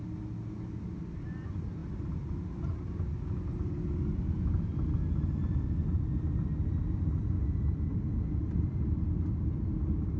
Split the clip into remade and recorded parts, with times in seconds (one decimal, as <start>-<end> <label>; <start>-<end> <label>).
0.0-10.2 recorded